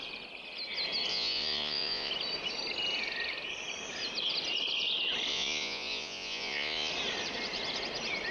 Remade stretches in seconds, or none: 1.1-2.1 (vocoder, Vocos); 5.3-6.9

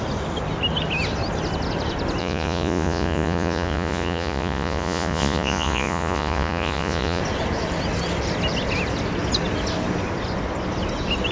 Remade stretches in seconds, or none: 2.2-7.2 (vocoder, Vocos)

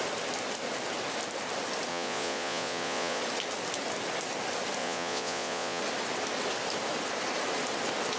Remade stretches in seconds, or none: 1.9-3.2 (vocoder, Vocos); 4.8-5.8

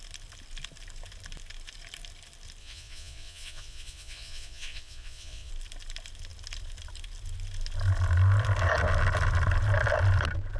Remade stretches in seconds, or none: 2.6-5.5 (vocoder, Vocos)

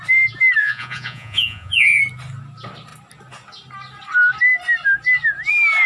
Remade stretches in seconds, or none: 0.6-2.0 (vocoder, Vocos)

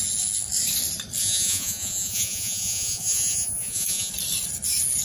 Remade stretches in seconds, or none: 1.2-4.1 (vocoder, Vocos)